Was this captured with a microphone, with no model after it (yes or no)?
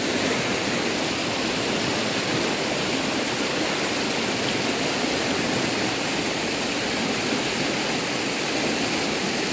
yes